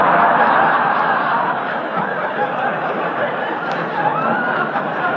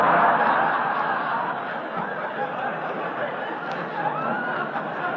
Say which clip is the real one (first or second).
second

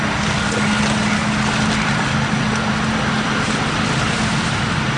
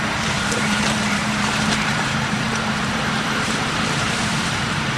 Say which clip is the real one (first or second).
first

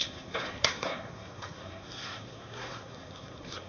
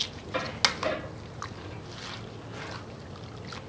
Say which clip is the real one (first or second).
second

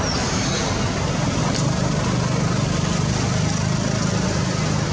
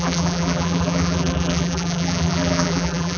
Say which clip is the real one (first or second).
first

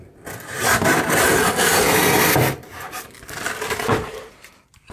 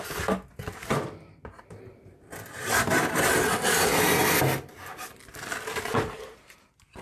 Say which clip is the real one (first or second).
second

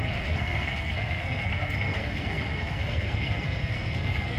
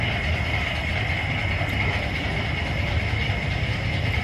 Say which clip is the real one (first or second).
second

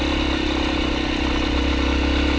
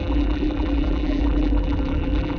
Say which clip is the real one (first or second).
first